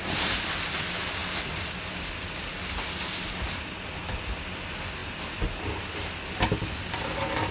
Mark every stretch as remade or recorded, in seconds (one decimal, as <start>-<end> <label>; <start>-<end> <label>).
0.0-7.5 recorded